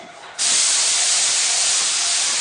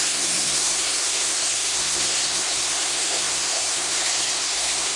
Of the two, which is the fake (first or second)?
second